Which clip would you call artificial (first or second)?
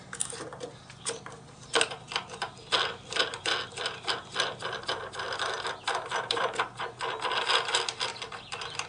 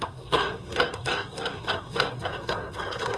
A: second